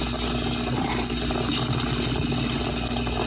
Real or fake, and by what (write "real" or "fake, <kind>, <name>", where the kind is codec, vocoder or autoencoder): real